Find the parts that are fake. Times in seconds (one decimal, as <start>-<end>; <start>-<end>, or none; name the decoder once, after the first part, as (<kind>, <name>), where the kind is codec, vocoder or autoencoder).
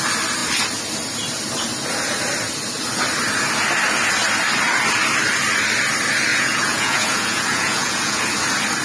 6.3-8.2 (vocoder, Vocos)